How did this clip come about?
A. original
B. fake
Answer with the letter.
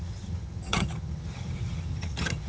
B